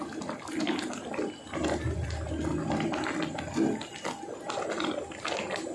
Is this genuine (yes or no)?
yes